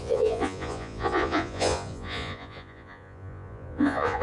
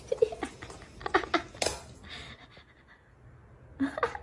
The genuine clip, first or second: second